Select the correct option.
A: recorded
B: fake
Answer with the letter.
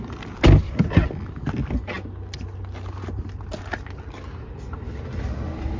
A